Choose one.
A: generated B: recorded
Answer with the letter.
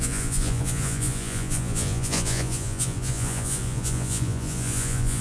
A